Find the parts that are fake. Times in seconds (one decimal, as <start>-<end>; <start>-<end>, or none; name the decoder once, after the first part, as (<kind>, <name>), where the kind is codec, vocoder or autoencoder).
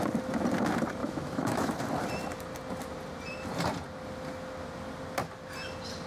1.0-1.8 (autoencoder, DAC-VAE)